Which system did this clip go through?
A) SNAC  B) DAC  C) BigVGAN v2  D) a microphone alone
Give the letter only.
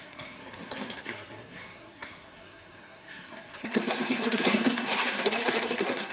A